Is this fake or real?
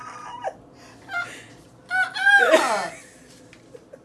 real